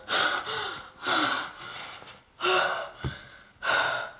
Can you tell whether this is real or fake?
real